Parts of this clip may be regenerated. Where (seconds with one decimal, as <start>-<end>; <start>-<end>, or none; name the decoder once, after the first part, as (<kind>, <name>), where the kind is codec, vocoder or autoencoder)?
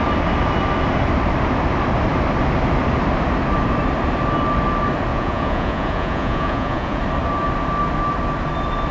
5.1-7.0 (vocoder, Vocos)